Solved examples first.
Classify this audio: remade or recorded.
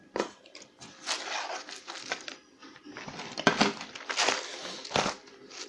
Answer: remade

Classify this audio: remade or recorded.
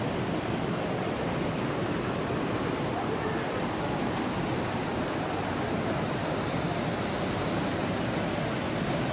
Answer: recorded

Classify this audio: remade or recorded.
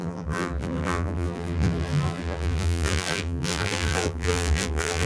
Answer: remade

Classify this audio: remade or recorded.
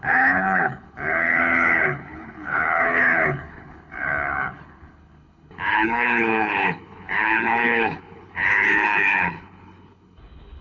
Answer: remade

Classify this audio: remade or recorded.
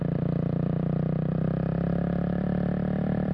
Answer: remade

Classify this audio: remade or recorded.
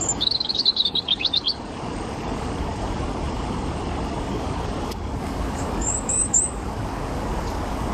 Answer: remade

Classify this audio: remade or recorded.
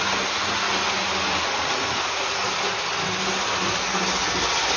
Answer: recorded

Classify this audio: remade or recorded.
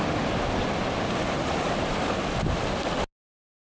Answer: recorded